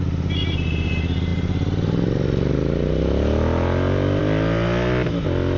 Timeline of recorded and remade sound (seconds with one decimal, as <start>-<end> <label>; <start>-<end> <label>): 0.0-5.6 recorded

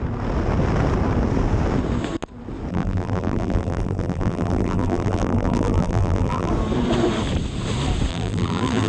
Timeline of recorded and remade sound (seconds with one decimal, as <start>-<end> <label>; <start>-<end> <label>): 0.0-2.7 recorded; 2.7-6.5 remade; 6.5-8.1 recorded; 8.1-8.9 remade

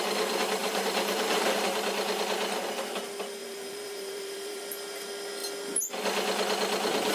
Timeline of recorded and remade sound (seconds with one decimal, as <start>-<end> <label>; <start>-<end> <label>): 0.0-0.6 recorded; 0.6-2.2 remade; 2.2-3.4 recorded; 3.4-4.6 remade; 4.6-7.1 recorded

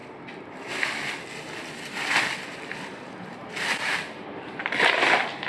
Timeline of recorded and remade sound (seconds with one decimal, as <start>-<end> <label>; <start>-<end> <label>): 0.0-0.8 remade; 0.8-2.9 recorded; 2.9-4.6 remade; 4.6-5.5 recorded

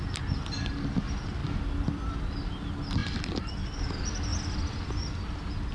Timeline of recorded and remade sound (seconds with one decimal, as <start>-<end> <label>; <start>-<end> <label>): 0.0-1.4 recorded; 1.4-2.1 remade; 2.1-3.0 recorded; 3.0-3.8 remade; 3.8-5.7 recorded

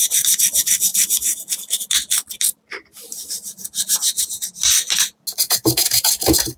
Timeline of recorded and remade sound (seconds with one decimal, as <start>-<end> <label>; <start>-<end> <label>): 0.0-6.6 recorded

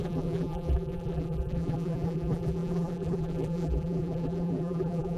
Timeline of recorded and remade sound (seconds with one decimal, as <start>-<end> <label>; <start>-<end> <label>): 0.0-5.2 remade

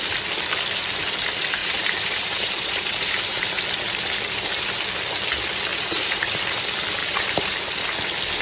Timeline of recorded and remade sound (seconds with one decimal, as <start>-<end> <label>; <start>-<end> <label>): 0.0-1.6 recorded; 1.6-3.6 remade; 3.6-5.7 recorded; 5.7-6.6 remade; 6.6-7.0 recorded; 7.0-7.5 remade; 7.5-8.4 recorded